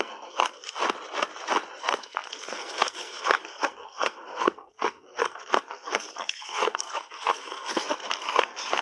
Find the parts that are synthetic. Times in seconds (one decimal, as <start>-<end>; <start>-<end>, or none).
0.0-0.8; 1.8-8.8